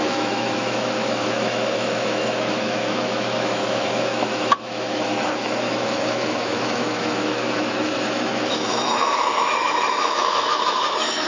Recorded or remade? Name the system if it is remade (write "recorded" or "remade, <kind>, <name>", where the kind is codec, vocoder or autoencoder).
remade, autoencoder, DAC-VAE